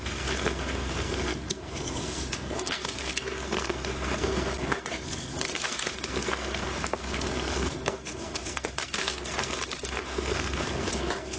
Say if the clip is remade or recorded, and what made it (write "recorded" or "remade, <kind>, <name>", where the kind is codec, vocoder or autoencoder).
remade, codec, SNAC